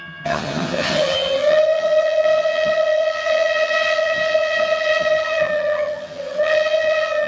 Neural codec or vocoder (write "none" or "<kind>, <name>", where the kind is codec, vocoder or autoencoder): vocoder, HiFi-GAN